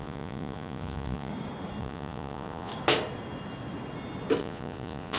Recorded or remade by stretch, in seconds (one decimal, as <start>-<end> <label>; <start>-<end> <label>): 0.0-1.3 remade; 1.3-1.8 recorded; 1.8-2.7 remade; 2.7-4.4 recorded; 4.4-5.2 remade